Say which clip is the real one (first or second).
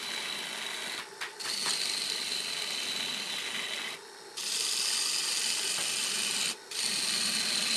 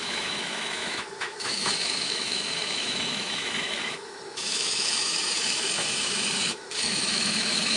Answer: first